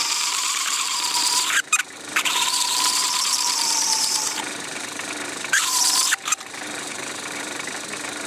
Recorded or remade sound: remade